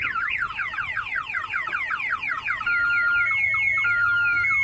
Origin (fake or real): real